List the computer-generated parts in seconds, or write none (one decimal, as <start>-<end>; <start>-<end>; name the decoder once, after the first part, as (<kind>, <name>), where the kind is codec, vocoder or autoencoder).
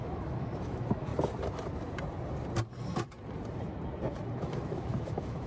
0.0-1.1 (autoencoder, DAC-VAE); 4.4-5.5